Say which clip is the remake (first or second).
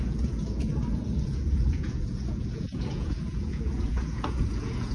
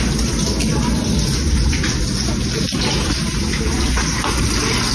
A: first